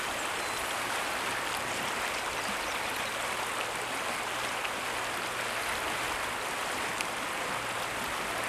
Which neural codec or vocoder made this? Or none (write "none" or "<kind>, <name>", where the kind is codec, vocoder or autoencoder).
none